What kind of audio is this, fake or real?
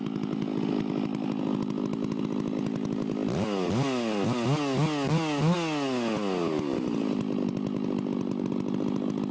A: real